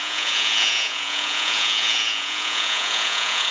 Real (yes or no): no